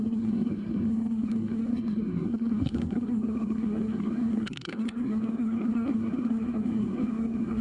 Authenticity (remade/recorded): remade